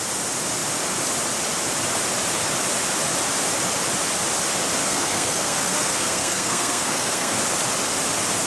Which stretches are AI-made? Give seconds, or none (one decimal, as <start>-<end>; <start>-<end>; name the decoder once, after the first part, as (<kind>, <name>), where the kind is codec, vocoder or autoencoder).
4.8-7.4 (codec, SNAC)